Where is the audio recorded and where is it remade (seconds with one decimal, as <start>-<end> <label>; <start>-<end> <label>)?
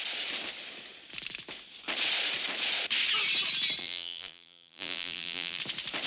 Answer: 0.0-3.8 recorded; 3.8-5.6 remade; 5.6-6.1 recorded